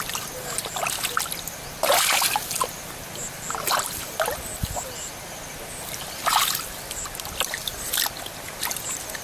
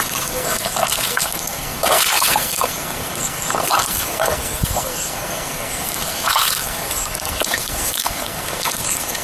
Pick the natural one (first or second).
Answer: first